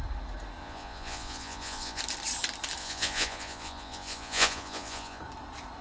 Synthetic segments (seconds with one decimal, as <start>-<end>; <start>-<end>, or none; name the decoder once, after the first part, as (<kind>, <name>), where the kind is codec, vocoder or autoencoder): 0.6-2.0 (vocoder, Vocos); 2.8-5.2